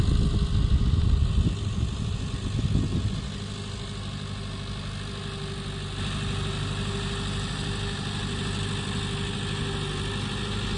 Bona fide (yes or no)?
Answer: yes